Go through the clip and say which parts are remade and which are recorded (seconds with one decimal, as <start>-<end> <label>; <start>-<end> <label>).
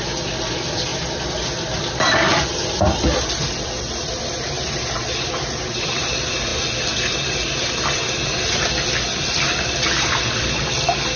0.0-0.9 remade; 0.9-1.9 recorded; 1.9-6.5 remade; 6.5-8.6 recorded; 8.6-11.2 remade